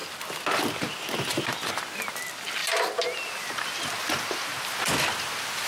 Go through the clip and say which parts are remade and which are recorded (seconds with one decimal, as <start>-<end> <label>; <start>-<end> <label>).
0.0-5.7 recorded